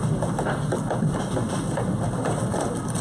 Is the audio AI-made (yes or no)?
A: no